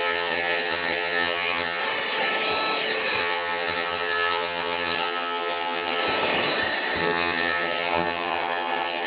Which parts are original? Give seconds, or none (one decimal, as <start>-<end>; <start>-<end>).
1.8-3.2; 6.0-7.0